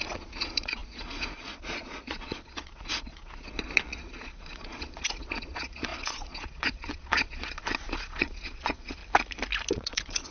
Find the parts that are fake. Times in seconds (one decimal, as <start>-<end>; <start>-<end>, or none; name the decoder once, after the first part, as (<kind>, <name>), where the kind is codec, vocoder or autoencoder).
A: 0.0-9.0 (vocoder, Vocos); 9.7-10.3